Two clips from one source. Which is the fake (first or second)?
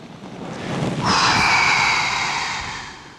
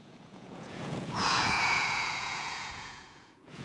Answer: second